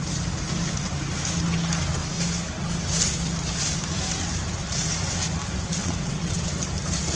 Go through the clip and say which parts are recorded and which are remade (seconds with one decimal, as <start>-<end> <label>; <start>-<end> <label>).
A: 0.0-5.8 recorded; 5.8-6.4 remade; 6.4-7.2 recorded